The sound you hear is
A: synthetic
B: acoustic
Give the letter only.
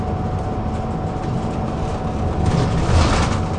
B